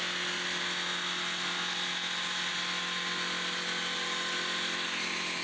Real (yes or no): yes